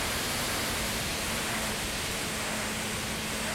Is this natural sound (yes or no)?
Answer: yes